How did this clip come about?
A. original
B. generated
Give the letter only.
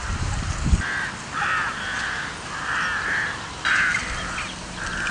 A